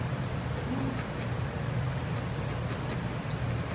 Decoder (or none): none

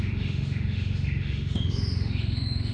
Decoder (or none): autoencoder, DAC-VAE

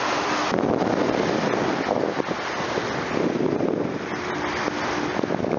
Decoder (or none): none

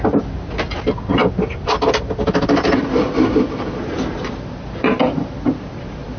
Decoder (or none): none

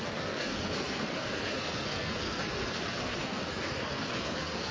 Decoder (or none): codec, SNAC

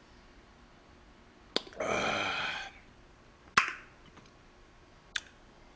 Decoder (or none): none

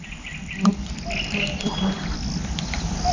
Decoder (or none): none